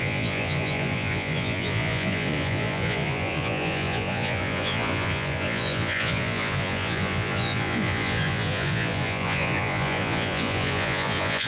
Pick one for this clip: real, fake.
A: fake